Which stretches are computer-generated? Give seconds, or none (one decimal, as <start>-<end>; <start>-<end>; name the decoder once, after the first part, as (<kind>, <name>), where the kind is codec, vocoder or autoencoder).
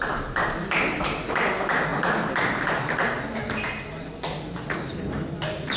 none